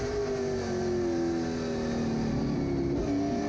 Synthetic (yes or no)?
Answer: no